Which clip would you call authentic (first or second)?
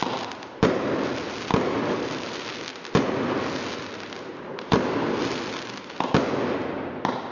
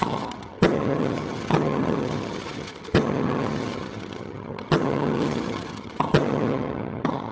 first